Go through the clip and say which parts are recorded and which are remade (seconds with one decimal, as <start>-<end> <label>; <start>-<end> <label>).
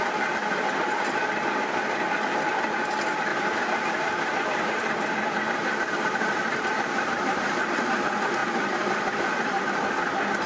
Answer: 0.0-3.3 recorded; 3.3-7.6 remade; 7.6-8.4 recorded; 8.4-9.6 remade; 9.6-10.5 recorded